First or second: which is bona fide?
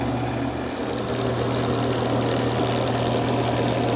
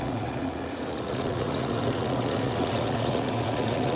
first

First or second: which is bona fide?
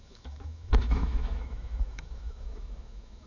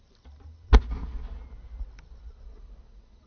second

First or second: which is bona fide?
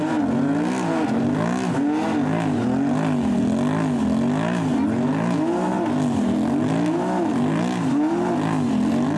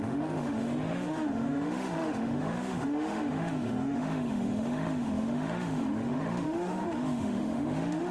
first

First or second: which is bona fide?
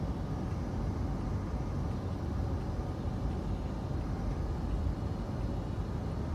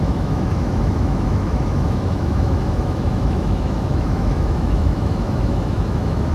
first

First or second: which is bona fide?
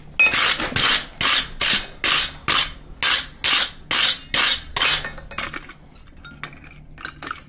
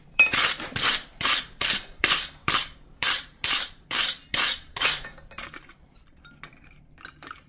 first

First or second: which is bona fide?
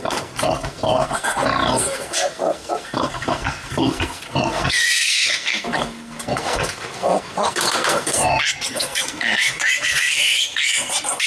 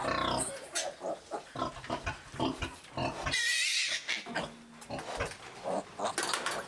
second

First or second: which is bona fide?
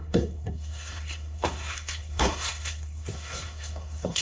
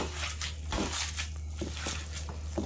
second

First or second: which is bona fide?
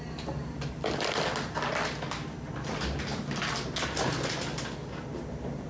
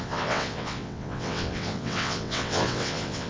first